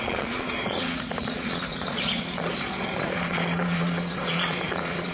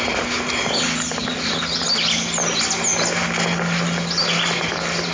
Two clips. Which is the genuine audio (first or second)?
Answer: second